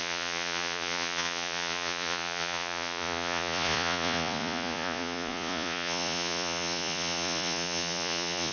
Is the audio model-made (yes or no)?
yes